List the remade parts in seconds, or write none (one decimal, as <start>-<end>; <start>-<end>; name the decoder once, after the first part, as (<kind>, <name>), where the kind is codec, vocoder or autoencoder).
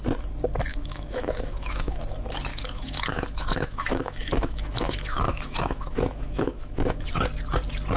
0.7-2.0 (autoencoder, DAC-VAE); 2.5-7.1